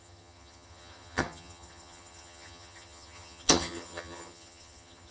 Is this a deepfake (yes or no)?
yes